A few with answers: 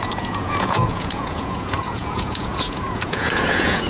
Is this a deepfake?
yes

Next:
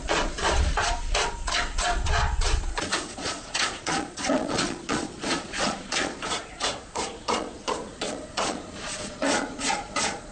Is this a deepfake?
yes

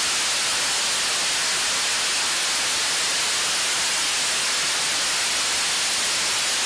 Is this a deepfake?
no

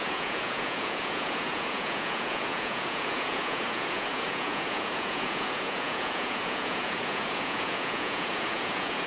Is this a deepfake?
yes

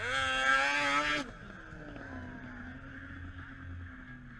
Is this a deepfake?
no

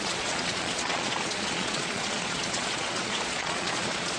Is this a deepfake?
yes